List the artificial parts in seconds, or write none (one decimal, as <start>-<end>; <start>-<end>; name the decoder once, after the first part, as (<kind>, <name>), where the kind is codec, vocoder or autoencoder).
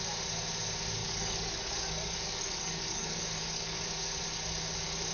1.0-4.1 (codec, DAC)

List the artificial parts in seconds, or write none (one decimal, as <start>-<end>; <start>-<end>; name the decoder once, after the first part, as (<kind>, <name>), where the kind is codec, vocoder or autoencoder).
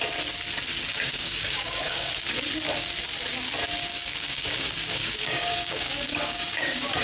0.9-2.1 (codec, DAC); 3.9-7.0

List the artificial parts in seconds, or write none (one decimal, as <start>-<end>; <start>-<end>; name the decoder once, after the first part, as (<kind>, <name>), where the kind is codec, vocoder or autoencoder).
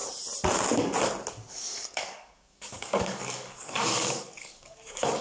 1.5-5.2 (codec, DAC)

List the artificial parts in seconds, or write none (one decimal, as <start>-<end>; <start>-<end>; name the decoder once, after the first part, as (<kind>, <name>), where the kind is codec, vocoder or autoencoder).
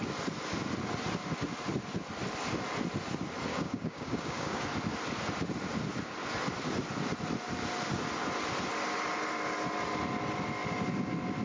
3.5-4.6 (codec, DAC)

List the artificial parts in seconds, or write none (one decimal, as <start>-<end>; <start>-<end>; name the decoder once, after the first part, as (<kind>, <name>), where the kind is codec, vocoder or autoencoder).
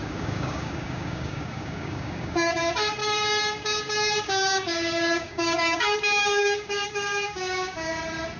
0.0-2.6 (codec, DAC); 3.0-8.0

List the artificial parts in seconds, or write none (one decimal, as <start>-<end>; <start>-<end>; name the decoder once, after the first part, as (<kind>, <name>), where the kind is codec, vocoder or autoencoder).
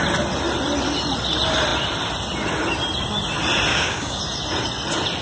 3.7-4.2 (codec, DAC)